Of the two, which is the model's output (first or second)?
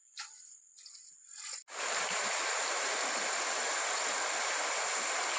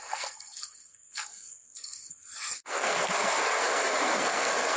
second